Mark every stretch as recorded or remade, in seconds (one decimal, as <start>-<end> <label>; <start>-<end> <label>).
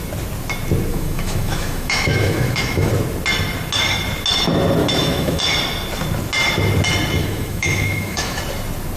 0.0-0.9 recorded; 0.9-2.9 remade; 2.9-4.8 recorded; 4.8-5.4 remade; 5.4-7.2 recorded; 7.2-8.4 remade; 8.4-9.0 recorded